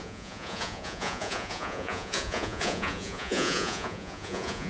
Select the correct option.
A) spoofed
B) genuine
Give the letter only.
A